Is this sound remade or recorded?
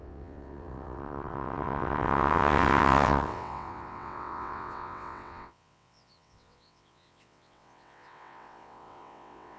remade